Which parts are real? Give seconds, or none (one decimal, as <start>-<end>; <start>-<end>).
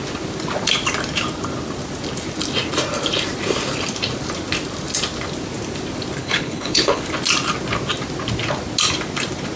0.0-6.2; 7.0-9.6